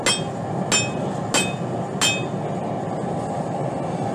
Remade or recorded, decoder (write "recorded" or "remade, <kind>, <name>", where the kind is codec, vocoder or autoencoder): recorded